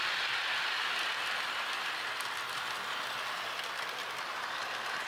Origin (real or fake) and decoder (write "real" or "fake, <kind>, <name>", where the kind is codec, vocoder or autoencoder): real